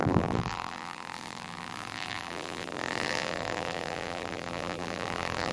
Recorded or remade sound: remade